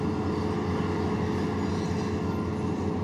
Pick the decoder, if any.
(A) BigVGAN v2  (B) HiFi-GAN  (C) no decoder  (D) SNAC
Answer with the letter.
C